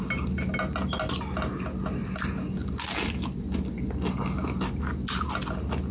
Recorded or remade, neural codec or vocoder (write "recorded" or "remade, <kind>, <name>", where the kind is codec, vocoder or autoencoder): recorded